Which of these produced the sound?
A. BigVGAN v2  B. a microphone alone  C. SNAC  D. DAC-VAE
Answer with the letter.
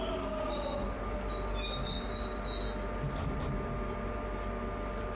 B